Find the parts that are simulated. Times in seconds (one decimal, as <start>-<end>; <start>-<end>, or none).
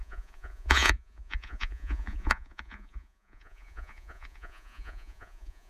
0.0-5.7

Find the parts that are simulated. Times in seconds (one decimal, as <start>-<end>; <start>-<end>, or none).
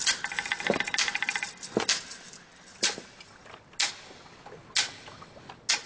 none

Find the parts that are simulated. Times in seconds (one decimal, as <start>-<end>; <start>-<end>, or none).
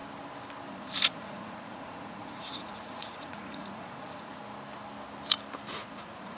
0.7-4.4; 5.7-6.4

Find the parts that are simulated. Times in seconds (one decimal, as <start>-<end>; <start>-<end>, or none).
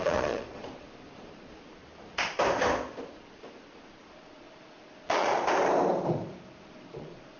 0.0-1.8; 3.0-5.3; 6.6-7.4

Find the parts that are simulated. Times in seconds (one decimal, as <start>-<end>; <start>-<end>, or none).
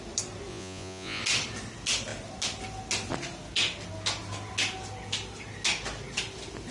0.5-1.2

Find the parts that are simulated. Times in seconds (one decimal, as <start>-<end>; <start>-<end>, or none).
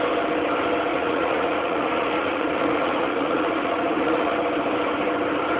0.9-4.3